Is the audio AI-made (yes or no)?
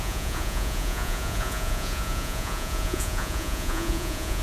yes